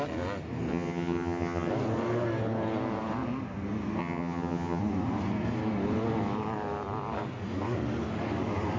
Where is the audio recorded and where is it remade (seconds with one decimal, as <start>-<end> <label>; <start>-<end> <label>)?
0.0-0.7 recorded; 0.7-1.7 remade; 1.7-4.0 recorded; 4.0-4.8 remade; 4.8-8.8 recorded